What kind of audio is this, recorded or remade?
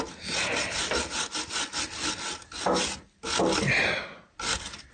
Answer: recorded